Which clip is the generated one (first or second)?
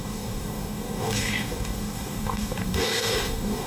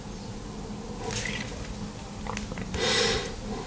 first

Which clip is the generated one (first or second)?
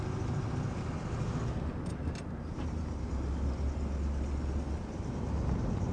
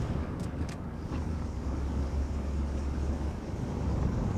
second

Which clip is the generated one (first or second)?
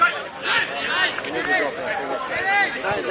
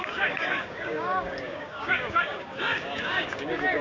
second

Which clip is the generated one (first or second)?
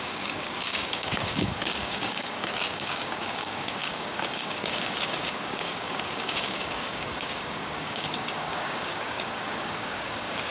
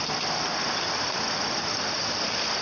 first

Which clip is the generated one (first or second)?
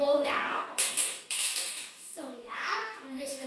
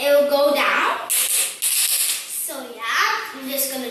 first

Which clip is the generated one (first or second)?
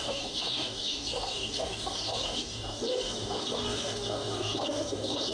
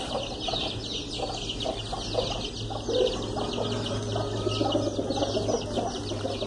first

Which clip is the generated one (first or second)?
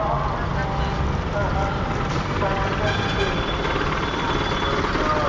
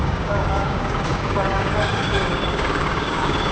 second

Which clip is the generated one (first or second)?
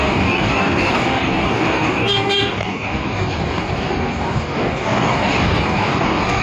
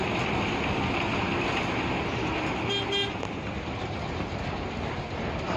first